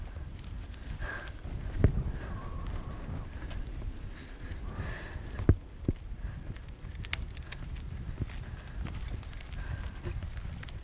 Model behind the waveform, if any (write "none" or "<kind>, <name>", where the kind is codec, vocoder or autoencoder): none